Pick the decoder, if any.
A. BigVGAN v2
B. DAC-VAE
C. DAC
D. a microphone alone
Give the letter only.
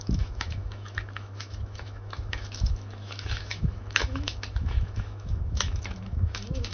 B